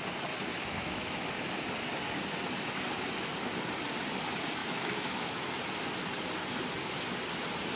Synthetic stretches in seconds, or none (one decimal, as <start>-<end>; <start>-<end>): 0.5-1.3; 4.6-5.4